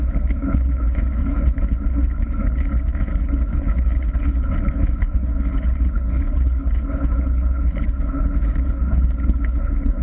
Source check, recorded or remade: remade